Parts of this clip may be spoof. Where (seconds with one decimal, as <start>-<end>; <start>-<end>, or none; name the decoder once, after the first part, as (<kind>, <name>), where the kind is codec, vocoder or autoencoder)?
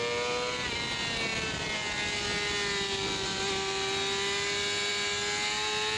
none